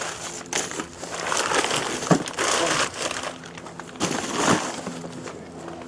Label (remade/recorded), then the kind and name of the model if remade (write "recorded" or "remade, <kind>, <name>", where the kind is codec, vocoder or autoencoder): recorded